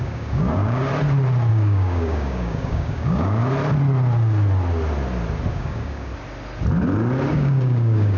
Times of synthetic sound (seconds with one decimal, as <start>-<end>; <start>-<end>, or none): 0.0-0.9; 1.5-3.4; 5.5-6.1; 7.3-8.2